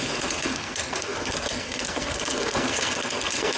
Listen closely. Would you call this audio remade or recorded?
remade